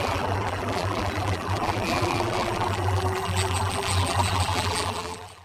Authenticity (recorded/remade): remade